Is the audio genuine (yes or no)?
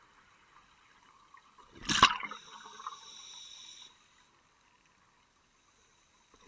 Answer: yes